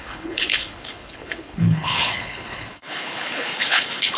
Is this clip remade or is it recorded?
remade